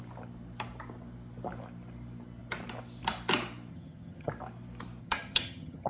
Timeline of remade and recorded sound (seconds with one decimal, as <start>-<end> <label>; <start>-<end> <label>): 0.0-3.7 recorded; 3.7-4.3 remade; 4.3-5.0 recorded; 5.0-5.9 remade